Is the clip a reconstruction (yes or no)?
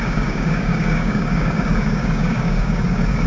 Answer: yes